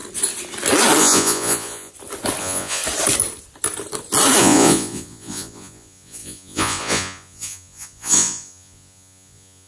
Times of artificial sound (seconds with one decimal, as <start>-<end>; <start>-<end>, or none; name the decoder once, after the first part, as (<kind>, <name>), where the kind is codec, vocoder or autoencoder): 1.0-1.9 (vocoder, Vocos); 2.4-2.8; 4.4-9.7